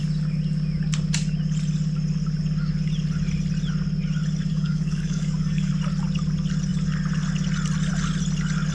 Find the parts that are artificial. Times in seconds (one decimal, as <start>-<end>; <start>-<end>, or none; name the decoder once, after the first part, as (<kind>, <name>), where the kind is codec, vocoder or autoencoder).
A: 4.5-5.7 (codec, DAC)